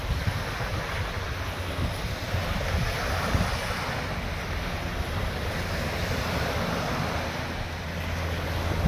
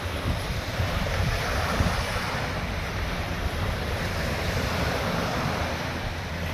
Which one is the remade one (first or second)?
second